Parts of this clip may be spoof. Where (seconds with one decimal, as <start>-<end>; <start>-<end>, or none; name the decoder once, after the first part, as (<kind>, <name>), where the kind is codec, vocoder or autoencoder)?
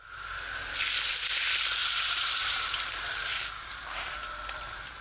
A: 1.8-5.0 (vocoder, BigVGAN v2)